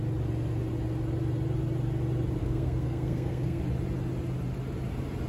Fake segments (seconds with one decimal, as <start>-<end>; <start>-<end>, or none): 2.4-3.6